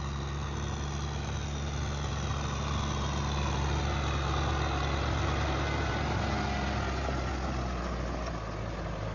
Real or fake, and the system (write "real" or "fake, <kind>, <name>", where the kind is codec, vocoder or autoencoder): real